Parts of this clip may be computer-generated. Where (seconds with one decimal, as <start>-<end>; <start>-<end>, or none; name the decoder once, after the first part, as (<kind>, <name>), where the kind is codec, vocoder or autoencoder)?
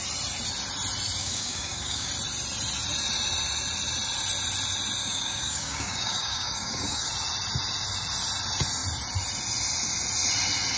1.2-2.1 (codec, DAC); 5.0-7.1